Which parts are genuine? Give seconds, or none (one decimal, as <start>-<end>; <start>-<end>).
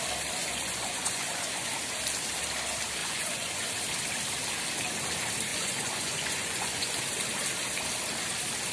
0.0-0.4; 1.7-3.0; 3.7-5.5; 6.9-8.7